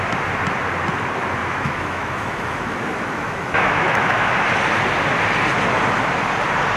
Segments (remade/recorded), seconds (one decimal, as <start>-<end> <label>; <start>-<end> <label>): 0.0-1.4 recorded; 1.4-4.3 remade; 4.3-6.8 recorded